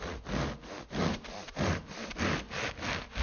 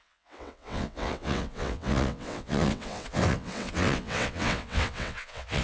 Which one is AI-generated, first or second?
second